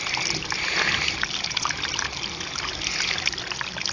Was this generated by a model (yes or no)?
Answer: no